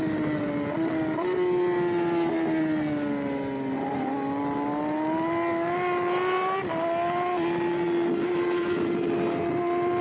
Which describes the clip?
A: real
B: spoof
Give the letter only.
A